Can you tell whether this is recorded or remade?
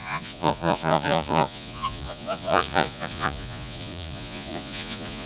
remade